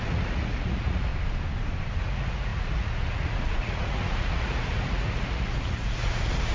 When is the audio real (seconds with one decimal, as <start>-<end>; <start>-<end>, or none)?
1.1-2.0